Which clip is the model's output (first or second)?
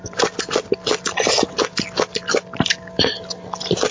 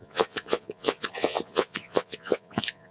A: second